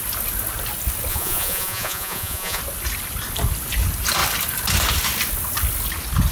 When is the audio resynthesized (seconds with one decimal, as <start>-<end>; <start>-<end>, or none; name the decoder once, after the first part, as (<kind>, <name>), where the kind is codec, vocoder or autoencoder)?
1.1-2.6 (vocoder, Vocos)